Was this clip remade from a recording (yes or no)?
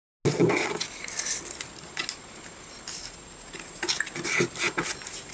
no